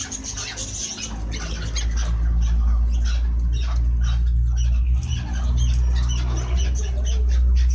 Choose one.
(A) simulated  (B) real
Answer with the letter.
B